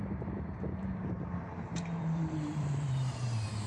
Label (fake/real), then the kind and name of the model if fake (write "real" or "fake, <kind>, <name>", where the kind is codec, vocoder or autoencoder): fake, vocoder, BigVGAN v2